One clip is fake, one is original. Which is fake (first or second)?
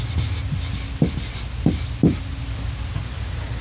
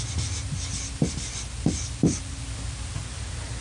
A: first